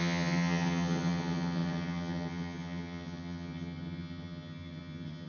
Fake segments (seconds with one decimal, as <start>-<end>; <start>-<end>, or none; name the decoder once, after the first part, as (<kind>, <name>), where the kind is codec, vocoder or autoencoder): 0.0-5.3 (vocoder, HiFi-GAN)